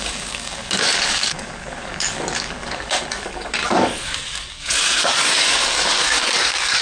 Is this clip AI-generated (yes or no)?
yes